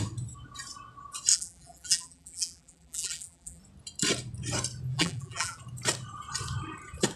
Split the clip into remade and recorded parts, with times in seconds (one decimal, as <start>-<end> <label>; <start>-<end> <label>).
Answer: 0.0-1.3 recorded; 1.3-3.6 remade; 3.6-4.9 recorded; 4.9-5.6 remade; 5.6-7.2 recorded